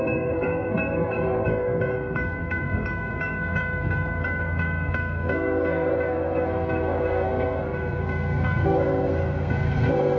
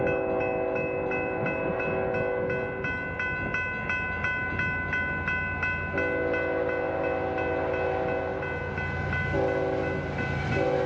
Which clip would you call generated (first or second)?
first